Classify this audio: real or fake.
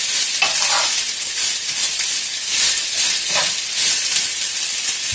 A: real